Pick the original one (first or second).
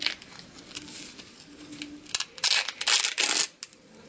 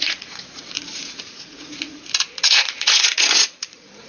first